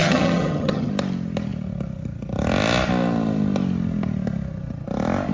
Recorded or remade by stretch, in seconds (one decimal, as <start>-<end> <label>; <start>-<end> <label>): 0.0-0.9 remade; 0.9-5.3 recorded